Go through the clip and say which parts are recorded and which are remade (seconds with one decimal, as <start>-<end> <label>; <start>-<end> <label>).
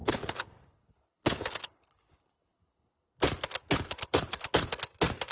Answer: 0.0-3.2 remade; 3.2-3.6 recorded; 3.6-4.7 remade; 4.7-5.3 recorded